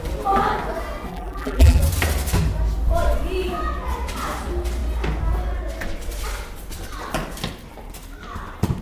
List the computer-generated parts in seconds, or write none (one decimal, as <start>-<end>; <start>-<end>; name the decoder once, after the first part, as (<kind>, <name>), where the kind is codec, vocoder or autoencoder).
1.1-1.8 (vocoder, BigVGAN v2)